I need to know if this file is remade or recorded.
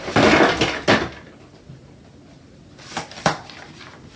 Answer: recorded